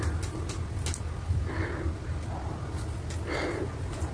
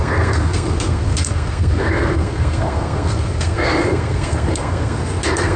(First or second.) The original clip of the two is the first